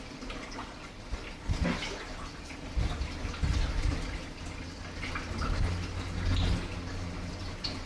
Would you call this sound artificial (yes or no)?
no